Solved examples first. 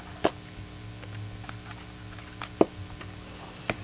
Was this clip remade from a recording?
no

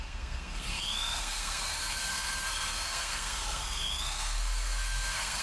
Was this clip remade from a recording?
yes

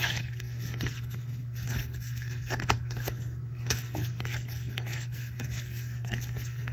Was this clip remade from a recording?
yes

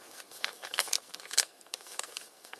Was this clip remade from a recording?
yes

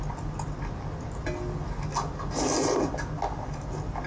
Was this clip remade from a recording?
no